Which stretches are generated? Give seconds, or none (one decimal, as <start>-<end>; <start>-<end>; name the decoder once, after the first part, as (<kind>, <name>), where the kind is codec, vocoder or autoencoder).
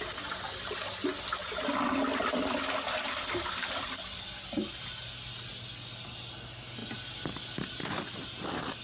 none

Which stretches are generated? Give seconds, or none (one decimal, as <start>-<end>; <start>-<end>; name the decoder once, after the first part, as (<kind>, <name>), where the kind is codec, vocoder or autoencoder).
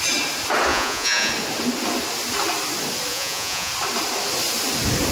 0.7-1.3 (vocoder, Vocos); 3.1-3.7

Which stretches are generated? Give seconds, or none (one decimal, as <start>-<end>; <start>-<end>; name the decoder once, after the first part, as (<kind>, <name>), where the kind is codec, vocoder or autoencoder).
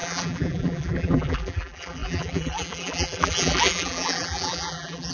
0.0-5.1 (vocoder, BigVGAN v2)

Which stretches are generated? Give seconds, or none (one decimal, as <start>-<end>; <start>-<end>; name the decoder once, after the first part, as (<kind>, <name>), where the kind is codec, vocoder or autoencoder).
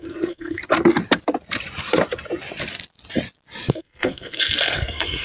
0.0-0.6 (codec, SNAC); 3.7-5.2